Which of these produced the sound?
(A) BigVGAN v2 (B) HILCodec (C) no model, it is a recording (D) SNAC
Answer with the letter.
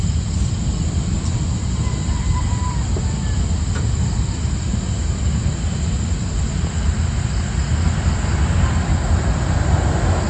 C